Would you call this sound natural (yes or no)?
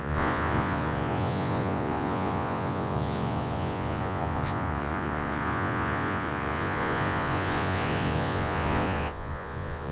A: no